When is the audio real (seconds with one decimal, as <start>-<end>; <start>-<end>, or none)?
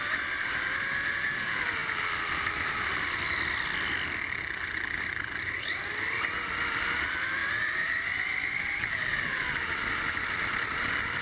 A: 0.0-11.2